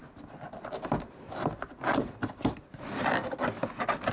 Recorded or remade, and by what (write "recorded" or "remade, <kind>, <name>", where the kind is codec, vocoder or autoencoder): recorded